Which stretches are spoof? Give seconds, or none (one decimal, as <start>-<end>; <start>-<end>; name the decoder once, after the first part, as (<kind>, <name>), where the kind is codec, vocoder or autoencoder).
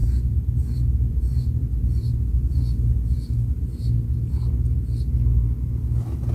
0.0-2.8 (vocoder, BigVGAN v2)